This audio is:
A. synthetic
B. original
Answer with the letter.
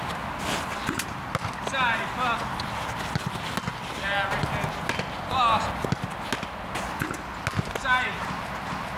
B